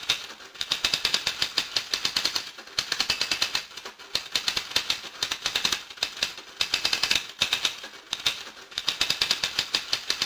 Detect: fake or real real